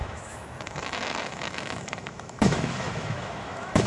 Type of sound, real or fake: fake